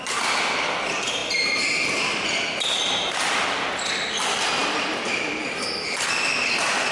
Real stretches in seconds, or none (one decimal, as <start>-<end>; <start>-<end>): 0.0-6.9